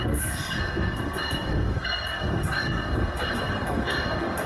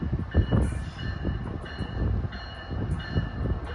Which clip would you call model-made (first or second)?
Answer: first